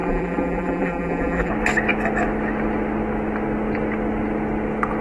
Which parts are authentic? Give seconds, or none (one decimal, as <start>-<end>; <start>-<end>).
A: 1.5-5.0